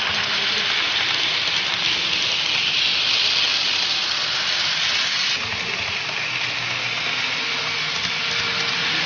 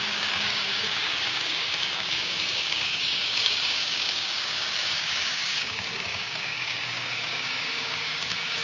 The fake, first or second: second